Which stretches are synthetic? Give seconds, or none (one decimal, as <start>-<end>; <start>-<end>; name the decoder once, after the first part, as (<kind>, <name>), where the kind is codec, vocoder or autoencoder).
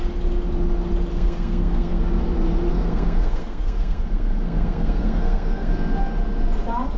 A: 1.1-2.0 (codec, SNAC); 2.7-5.7